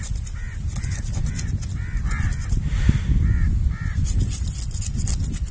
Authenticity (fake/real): real